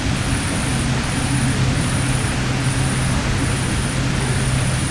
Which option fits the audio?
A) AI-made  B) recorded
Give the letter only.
B